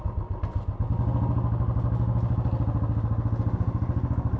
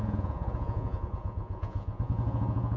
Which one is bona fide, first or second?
first